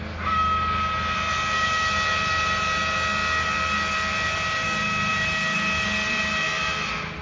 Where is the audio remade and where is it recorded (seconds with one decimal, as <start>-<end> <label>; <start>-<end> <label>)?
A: 0.0-7.2 recorded